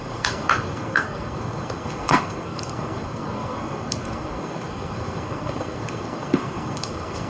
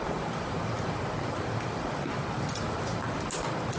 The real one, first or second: second